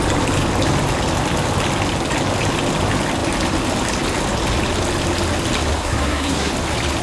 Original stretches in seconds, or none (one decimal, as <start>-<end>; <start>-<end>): 0.0-5.8; 6.5-7.0